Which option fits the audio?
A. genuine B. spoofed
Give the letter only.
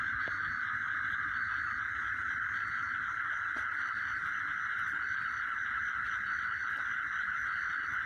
A